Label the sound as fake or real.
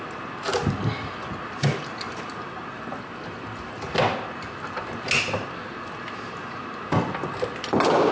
real